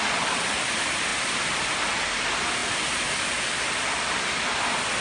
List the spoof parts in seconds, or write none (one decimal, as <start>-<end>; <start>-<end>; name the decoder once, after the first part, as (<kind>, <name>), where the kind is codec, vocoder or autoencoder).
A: none

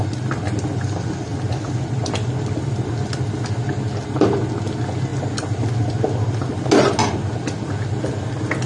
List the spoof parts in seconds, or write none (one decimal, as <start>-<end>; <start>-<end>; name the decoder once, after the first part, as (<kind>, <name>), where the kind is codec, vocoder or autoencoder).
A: none